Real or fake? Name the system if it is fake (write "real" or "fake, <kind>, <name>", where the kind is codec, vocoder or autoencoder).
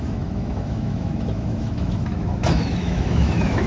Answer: fake, autoencoder, DAC-VAE